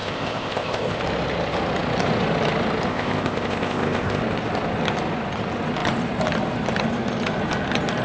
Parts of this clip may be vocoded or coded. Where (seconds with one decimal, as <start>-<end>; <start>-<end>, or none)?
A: 0.0-1.0; 2.9-4.2